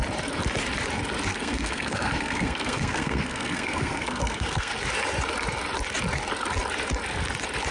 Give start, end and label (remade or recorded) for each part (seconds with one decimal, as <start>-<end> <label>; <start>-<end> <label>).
0.0-1.3 recorded; 1.3-4.7 remade; 4.7-7.7 recorded